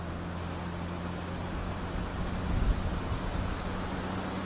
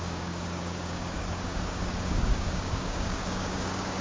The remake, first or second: second